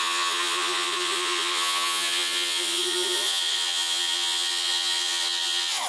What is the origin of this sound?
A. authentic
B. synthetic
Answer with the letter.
B